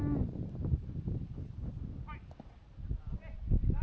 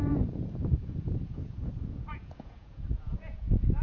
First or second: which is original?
first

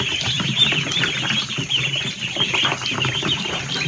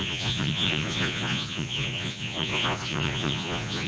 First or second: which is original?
first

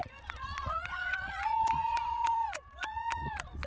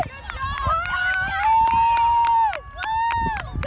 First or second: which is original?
second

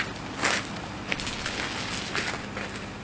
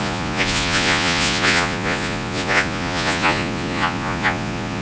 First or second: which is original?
first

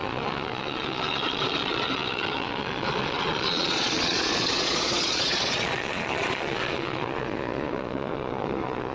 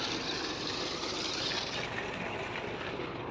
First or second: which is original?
second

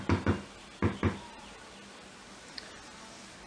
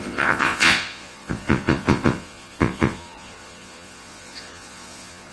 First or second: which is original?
first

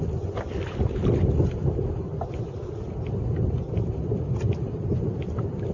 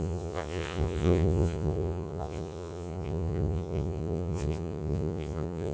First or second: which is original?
first